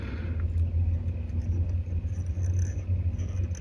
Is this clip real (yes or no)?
yes